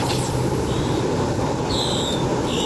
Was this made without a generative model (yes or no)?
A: yes